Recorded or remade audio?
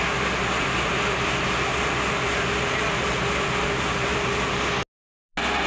recorded